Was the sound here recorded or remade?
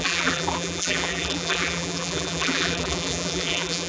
remade